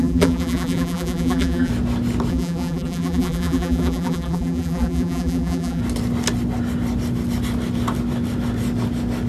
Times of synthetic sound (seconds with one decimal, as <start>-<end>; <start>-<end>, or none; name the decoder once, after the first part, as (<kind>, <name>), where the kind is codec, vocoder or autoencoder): 0.0-1.7 (vocoder, BigVGAN v2); 2.3-5.8